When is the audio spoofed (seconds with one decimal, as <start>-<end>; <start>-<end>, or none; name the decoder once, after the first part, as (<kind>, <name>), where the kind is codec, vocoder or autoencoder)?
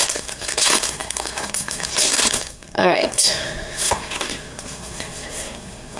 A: 0.0-6.0 (codec, SNAC)